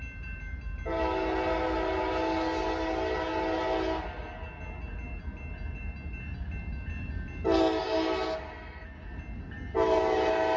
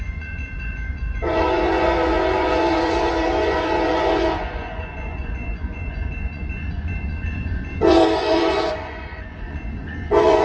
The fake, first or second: second